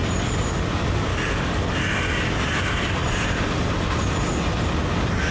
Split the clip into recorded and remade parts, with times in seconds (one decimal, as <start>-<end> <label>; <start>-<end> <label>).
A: 0.0-1.1 recorded; 1.1-1.7 remade; 1.7-5.3 recorded